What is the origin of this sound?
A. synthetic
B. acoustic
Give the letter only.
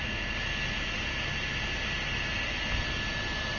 B